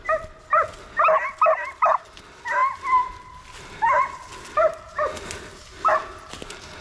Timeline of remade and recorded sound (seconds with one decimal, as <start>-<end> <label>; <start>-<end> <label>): 0.0-6.8 recorded